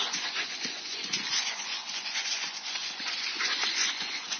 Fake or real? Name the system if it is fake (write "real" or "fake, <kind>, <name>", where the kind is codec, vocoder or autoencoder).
fake, vocoder, Vocos